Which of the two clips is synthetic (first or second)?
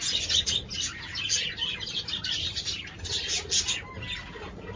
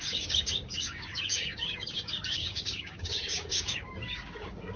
second